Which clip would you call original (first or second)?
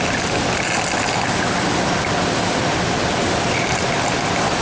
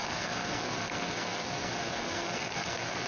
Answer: first